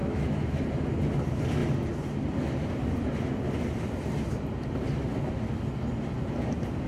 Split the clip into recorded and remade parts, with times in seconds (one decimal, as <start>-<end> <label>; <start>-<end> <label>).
0.0-0.6 remade; 0.6-6.9 recorded